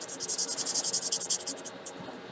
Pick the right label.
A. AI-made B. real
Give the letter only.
B